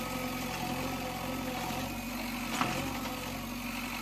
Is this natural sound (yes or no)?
yes